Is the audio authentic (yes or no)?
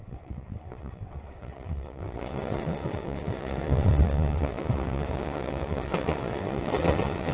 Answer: no